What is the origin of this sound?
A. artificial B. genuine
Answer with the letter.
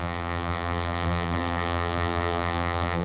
A